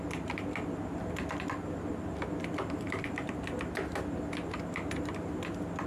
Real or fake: real